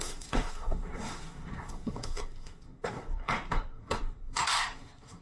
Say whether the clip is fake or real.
fake